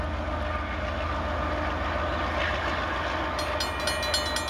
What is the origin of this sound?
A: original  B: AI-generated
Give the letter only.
A